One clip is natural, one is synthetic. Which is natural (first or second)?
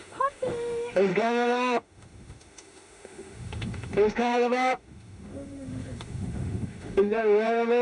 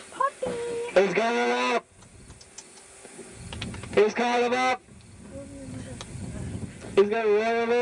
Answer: second